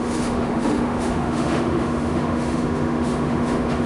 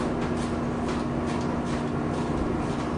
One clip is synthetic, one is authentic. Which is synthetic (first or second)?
first